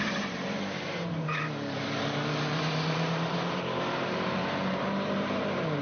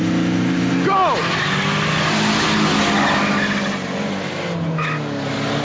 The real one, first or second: second